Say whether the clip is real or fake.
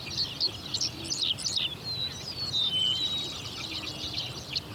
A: real